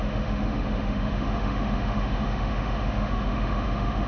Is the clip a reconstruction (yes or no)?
yes